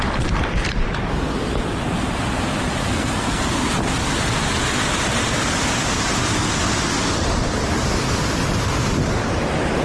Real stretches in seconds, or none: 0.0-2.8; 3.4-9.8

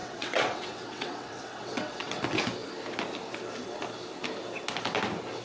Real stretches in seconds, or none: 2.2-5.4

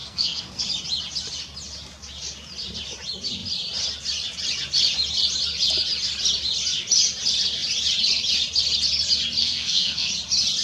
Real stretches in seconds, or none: 0.6-9.4; 10.1-10.6

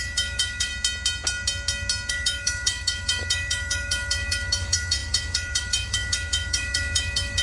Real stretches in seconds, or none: 0.7-2.1

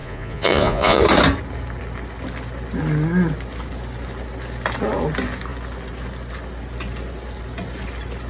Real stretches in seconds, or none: 1.0-8.3